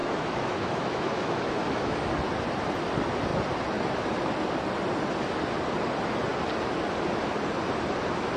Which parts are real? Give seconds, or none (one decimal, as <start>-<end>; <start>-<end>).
2.1-8.4